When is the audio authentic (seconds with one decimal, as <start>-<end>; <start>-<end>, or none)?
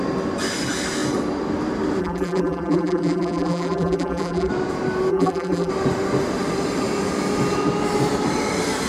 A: 0.0-2.0; 4.5-5.1; 5.7-8.9